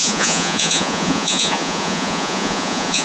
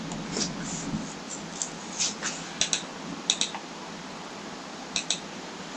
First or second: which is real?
second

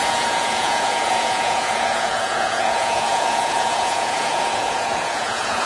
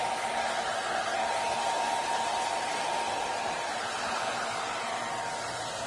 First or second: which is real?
second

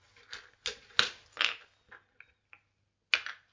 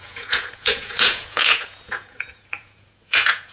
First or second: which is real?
first